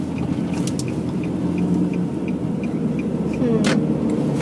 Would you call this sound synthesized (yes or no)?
no